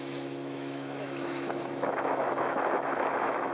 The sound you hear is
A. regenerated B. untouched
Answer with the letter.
A